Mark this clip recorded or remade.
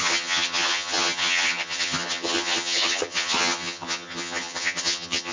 remade